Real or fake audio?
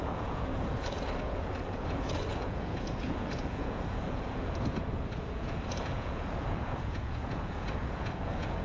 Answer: fake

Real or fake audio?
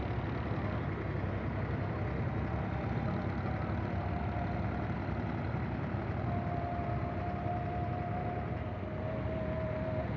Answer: real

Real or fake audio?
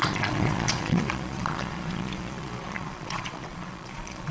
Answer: fake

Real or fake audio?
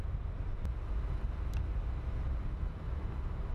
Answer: real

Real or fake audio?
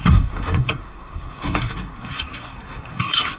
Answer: fake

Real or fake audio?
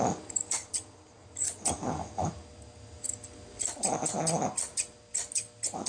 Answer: real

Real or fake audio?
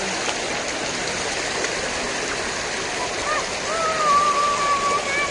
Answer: real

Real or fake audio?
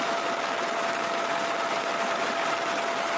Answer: real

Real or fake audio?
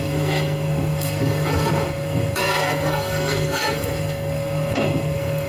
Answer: fake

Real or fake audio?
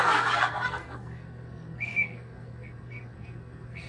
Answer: fake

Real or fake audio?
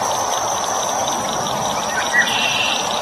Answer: real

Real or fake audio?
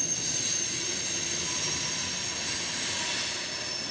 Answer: real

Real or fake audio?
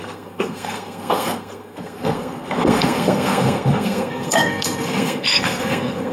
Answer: fake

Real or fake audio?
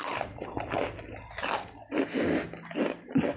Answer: real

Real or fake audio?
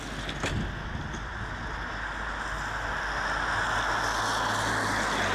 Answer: real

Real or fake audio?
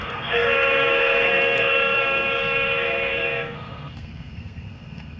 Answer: fake